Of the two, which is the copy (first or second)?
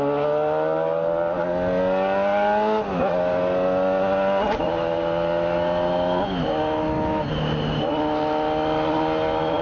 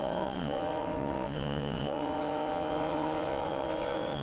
second